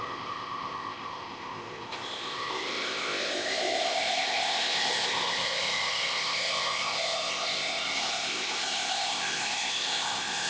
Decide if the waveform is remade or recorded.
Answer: remade